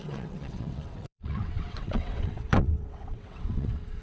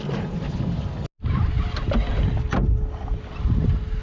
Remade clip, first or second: first